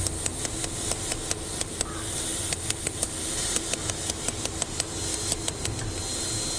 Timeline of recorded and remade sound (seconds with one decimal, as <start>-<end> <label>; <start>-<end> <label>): 0.0-2.3 recorded; 2.3-3.9 remade; 3.9-6.6 recorded

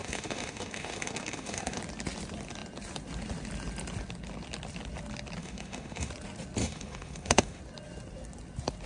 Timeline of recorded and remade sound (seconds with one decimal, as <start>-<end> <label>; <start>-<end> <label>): 0.0-1.8 remade; 1.8-5.4 recorded; 5.4-6.1 remade; 6.1-6.6 recorded; 6.6-7.6 remade; 7.6-8.9 recorded

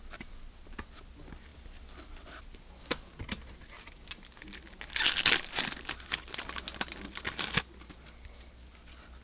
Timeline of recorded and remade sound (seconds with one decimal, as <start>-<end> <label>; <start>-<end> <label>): 0.0-9.2 recorded

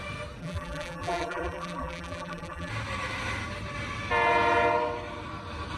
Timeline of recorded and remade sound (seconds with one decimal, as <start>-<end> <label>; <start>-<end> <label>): 0.0-0.4 recorded; 0.4-2.7 remade; 2.7-5.8 recorded

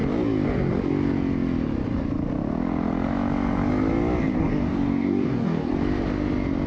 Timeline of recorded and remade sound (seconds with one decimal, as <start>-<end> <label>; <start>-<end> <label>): 0.0-4.3 recorded; 4.3-5.7 remade; 5.7-6.7 recorded

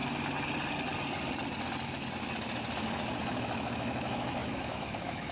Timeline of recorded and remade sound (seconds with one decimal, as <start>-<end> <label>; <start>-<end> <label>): 0.0-3.2 recorded; 3.2-5.3 remade

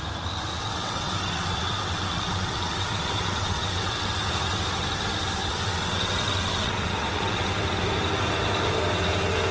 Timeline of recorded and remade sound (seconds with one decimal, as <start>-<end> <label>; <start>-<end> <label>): 0.0-0.5 recorded; 0.5-4.1 remade; 4.1-5.4 recorded; 5.4-7.5 remade; 7.5-9.5 recorded

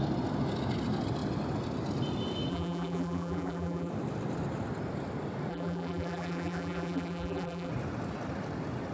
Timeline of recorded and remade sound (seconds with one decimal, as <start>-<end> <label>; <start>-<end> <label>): 0.0-2.5 recorded; 2.5-3.9 remade; 3.9-5.5 recorded; 5.5-7.7 remade; 7.7-8.9 recorded